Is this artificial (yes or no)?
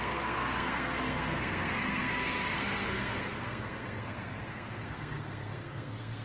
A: yes